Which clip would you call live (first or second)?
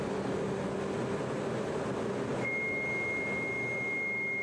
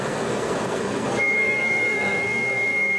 first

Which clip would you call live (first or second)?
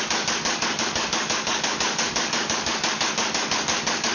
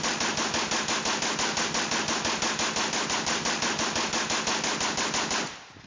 second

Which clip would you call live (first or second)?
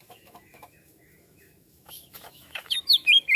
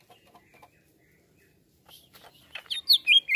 second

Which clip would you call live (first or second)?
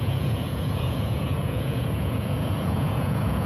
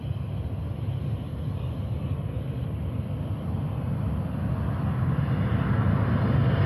second